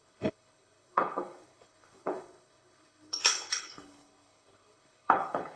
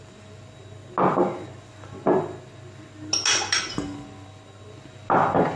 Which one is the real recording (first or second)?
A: second